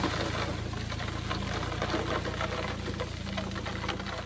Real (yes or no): yes